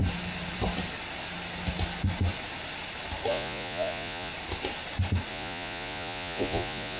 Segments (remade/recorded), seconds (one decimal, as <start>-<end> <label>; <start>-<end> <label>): 0.0-3.3 recorded; 3.3-4.3 remade; 4.3-5.3 recorded; 5.3-7.0 remade